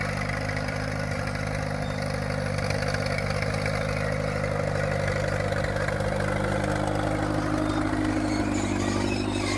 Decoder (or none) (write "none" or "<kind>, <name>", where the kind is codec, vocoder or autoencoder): none